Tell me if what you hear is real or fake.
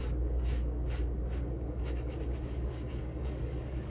fake